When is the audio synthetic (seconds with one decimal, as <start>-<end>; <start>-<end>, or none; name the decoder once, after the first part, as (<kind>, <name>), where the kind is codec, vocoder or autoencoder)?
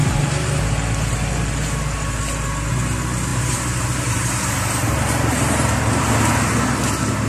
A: 3.3-6.1 (vocoder, BigVGAN v2)